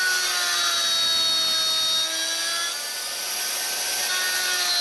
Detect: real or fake real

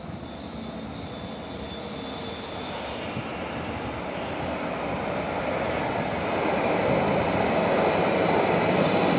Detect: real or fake real